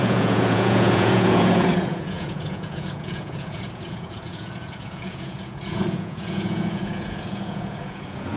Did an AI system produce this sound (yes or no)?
yes